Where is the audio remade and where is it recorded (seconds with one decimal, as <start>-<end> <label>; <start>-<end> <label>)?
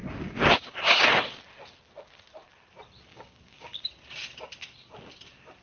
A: 0.0-1.0 remade; 1.0-3.1 recorded; 3.1-3.9 remade; 3.9-5.6 recorded